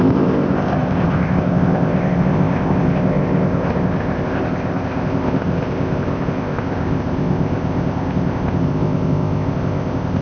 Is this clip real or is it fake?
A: fake